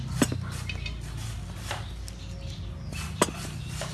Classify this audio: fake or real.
real